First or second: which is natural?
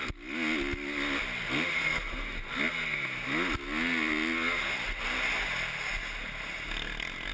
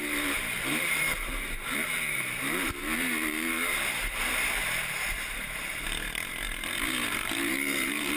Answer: first